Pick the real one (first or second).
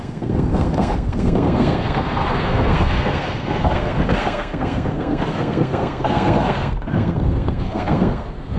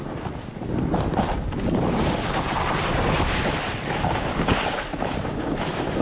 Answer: second